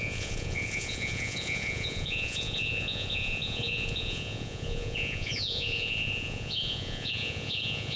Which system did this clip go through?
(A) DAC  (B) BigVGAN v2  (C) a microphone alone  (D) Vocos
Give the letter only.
D